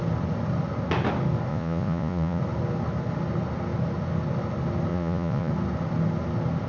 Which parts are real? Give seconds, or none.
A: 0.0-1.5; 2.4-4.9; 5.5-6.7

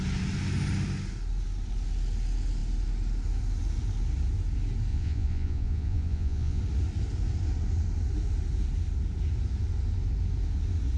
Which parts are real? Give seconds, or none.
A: 0.0-4.9; 6.6-11.0

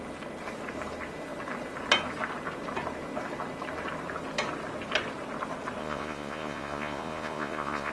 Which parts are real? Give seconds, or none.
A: 0.0-5.8

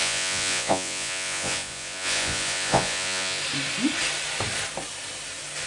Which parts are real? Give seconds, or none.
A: 3.4-5.7

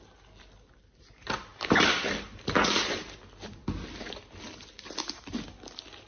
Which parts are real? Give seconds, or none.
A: 0.0-6.1

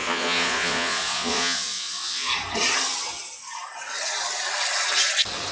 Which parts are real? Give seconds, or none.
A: 2.3-5.5

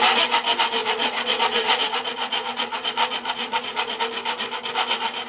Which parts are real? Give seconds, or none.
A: 0.0-0.8; 4.0-5.3

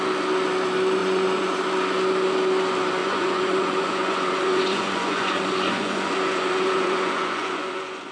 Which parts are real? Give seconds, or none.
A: 0.0-1.0; 1.6-3.0